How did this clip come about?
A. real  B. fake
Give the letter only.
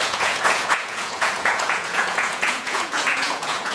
B